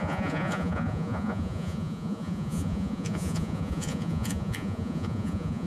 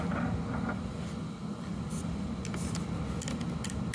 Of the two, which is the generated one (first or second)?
first